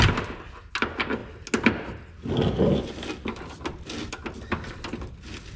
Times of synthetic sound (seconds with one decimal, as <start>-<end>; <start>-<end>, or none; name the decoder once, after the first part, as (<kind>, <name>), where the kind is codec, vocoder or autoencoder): none